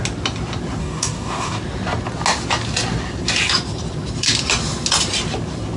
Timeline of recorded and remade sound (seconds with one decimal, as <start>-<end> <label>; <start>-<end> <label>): 0.0-0.8 recorded; 0.8-1.6 remade; 1.6-5.8 recorded